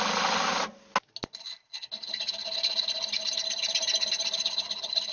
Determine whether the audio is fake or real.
real